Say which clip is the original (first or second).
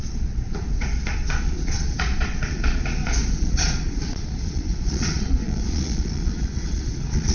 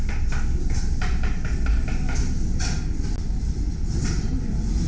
second